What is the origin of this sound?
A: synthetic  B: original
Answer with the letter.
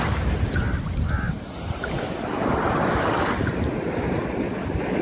A